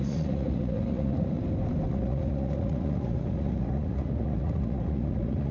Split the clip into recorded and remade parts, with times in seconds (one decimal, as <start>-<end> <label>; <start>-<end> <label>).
0.0-1.4 remade; 1.4-1.9 recorded; 1.9-5.5 remade